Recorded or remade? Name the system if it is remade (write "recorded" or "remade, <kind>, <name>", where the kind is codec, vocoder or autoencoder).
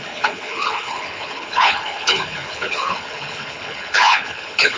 remade, codec, HILCodec